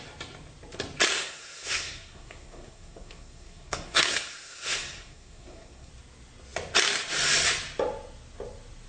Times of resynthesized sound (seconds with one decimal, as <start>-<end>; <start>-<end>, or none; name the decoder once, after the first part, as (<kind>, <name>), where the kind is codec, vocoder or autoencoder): 1.1-5.9 (codec, SNAC)